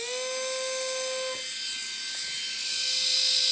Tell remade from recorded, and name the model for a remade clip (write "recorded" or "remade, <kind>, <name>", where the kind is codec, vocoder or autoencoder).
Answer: recorded